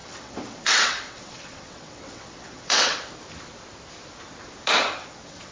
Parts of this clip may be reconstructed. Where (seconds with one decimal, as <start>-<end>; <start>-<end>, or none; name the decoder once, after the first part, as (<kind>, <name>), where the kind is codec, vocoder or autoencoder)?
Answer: 0.0-3.1 (vocoder, WaveNeXt); 4.8-5.5

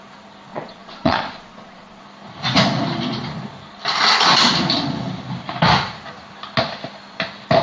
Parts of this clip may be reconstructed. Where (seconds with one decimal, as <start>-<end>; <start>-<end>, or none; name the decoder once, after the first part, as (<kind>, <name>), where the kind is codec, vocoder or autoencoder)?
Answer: 0.5-2.0 (vocoder, Vocos)

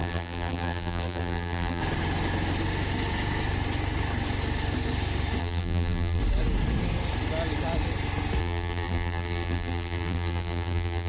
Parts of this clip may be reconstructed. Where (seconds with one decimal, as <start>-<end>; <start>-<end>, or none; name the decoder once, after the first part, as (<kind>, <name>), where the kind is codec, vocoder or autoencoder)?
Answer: 0.0-1.8 (vocoder, BigVGAN v2); 5.4-6.2; 8.4-11.1

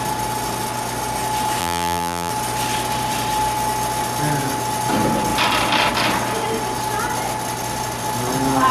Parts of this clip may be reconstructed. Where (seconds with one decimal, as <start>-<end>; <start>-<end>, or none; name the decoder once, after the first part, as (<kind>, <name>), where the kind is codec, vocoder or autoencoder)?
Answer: 1.6-2.3 (vocoder, BigVGAN v2)

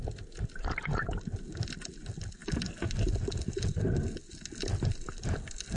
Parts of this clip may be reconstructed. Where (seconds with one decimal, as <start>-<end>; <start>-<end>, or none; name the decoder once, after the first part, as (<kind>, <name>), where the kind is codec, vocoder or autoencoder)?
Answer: none

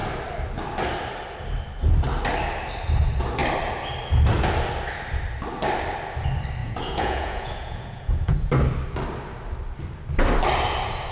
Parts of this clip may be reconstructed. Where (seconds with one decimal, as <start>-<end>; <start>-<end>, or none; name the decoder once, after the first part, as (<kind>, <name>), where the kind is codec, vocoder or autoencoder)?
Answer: 6.6-8.5 (vocoder, Vocos)

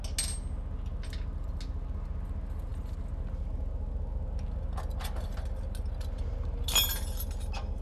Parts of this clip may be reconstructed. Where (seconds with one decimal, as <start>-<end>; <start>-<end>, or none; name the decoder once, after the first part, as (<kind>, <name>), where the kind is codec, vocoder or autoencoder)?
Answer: none

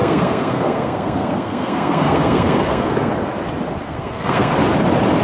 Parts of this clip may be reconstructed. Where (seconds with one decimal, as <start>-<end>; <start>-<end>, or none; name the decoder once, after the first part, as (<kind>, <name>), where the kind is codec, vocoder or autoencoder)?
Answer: 0.0-3.1 (codec, SNAC); 3.8-4.5